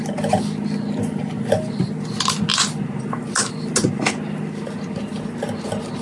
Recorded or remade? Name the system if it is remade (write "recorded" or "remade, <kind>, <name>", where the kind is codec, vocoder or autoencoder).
recorded